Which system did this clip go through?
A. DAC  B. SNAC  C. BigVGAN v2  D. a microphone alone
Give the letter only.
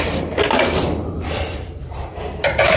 C